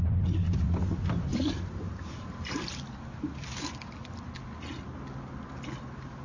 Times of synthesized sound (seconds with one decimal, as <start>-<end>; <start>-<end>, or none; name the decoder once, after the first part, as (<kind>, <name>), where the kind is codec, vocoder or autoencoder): 1.3-4.2 (vocoder, BigVGAN v2)